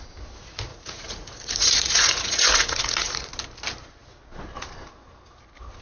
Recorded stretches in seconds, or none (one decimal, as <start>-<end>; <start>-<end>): 0.0-0.7; 3.3-5.8

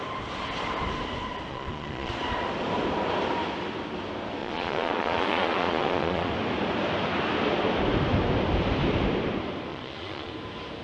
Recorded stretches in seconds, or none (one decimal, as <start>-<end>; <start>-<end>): 0.0-1.5; 2.1-4.4; 6.3-9.7; 10.3-10.8

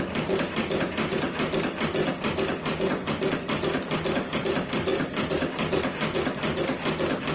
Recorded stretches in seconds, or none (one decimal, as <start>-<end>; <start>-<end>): 0.0-7.3

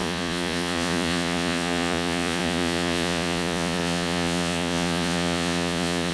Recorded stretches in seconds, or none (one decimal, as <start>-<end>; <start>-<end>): none